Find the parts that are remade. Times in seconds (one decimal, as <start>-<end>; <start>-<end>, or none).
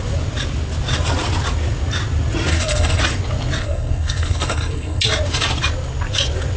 2.5-3.0; 3.6-5.0